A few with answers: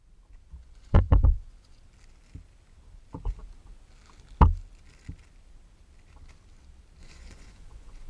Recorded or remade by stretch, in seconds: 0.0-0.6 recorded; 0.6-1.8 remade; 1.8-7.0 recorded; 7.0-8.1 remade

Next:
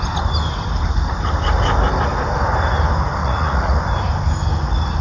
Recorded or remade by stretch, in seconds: 0.0-3.2 recorded; 3.2-3.8 remade; 3.8-5.0 recorded

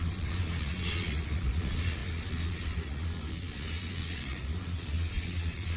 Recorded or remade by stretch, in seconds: 0.0-5.8 remade

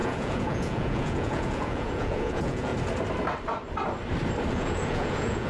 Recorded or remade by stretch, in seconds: 0.0-2.7 remade; 2.7-4.5 recorded; 4.5-5.5 remade

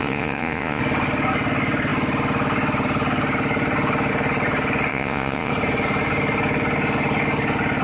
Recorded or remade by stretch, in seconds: 0.0-0.8 remade; 0.8-4.9 recorded; 4.9-5.5 remade; 5.5-7.8 recorded

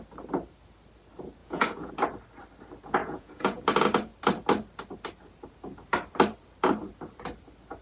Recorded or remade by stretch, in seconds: 0.0-1.4 recorded; 1.4-1.9 remade; 1.9-3.0 recorded; 3.0-3.6 remade; 3.6-7.8 recorded

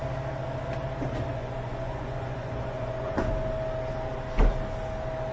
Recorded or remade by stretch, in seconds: 0.0-1.3 recorded; 1.3-3.3 remade; 3.3-5.3 recorded